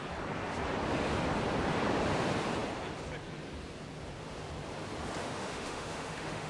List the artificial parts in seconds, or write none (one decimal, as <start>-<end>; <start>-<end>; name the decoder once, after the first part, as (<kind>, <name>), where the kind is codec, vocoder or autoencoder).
5.2-6.5 (autoencoder, DAC-VAE)